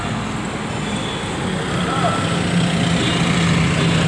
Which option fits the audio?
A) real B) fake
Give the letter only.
A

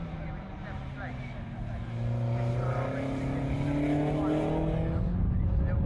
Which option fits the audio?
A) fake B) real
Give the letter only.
B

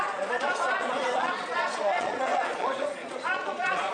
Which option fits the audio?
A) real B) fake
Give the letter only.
B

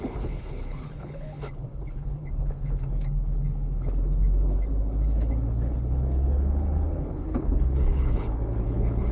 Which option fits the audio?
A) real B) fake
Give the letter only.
B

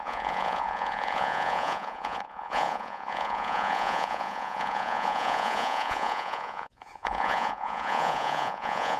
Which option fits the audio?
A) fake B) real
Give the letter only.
A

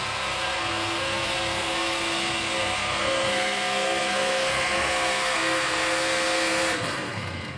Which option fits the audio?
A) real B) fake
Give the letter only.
B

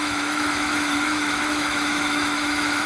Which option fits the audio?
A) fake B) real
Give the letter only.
A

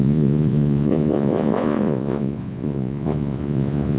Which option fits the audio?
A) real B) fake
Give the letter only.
B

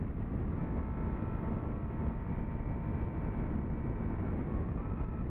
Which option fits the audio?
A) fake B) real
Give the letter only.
B